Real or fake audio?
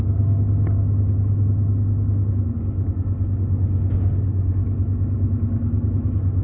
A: real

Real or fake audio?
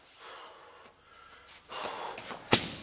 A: real